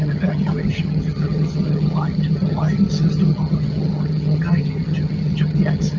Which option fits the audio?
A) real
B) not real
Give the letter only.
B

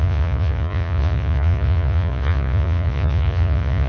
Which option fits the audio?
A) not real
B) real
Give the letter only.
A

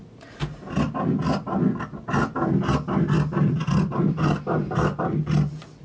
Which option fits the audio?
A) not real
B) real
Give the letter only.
B